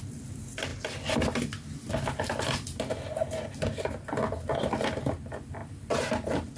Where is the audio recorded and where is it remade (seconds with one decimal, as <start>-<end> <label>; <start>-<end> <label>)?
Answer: 0.0-6.6 recorded

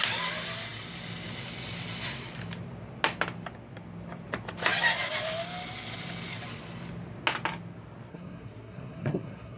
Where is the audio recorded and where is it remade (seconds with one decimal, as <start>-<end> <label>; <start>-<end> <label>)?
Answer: 0.0-8.1 recorded; 8.1-9.6 remade

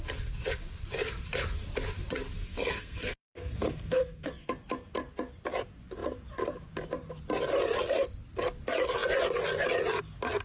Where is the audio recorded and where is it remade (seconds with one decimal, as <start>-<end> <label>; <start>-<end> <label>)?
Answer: 0.0-2.4 recorded; 2.4-4.5 remade; 4.5-10.4 recorded

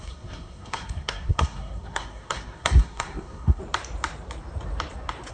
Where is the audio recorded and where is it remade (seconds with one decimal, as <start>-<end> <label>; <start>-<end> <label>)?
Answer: 0.0-3.6 remade; 3.6-5.3 recorded

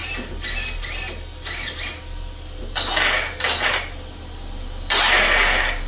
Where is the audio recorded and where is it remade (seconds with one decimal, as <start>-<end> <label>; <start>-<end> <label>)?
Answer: 0.0-5.9 recorded

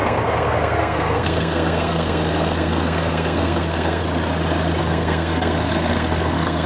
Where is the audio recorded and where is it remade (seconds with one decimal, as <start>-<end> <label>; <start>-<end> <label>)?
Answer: 0.0-4.0 remade; 4.0-4.8 recorded; 4.8-6.7 remade

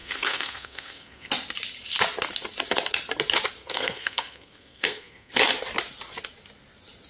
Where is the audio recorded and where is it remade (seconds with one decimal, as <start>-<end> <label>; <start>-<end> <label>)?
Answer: 0.0-1.3 remade; 1.3-3.6 recorded; 3.6-5.3 remade; 5.3-7.1 recorded

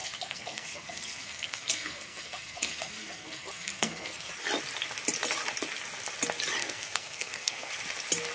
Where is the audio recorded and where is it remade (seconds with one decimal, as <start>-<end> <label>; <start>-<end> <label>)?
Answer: 0.0-4.3 remade; 4.3-6.6 recorded; 6.6-7.7 remade; 7.7-8.3 recorded